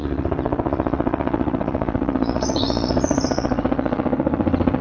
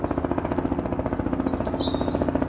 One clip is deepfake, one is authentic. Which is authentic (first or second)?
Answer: second